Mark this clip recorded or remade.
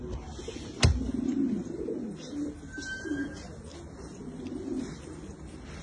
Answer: recorded